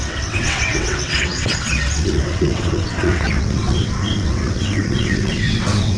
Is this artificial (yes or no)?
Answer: yes